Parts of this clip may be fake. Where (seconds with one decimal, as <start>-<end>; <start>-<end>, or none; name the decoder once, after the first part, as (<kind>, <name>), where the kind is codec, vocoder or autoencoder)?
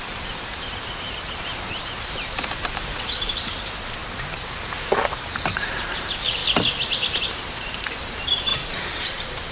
0.0-4.0 (vocoder, BigVGAN v2); 5.4-6.4; 7.2-9.5